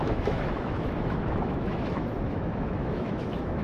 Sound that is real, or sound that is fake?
fake